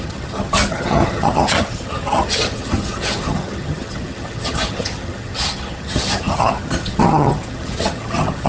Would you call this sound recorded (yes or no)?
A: no